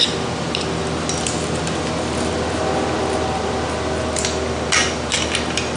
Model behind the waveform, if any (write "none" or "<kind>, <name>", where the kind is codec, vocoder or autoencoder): none